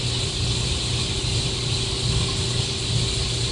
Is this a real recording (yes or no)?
yes